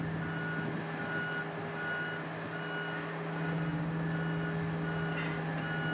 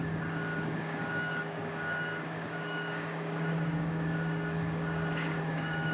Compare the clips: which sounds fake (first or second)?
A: second